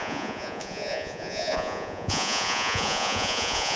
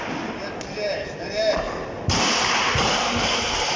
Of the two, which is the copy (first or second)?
first